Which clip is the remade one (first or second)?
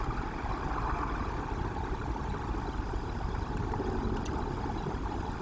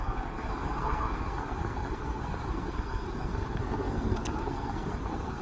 second